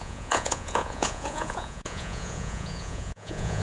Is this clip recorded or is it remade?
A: remade